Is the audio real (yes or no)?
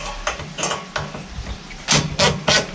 yes